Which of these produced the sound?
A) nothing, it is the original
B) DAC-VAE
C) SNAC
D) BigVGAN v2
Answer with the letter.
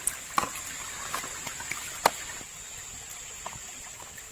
A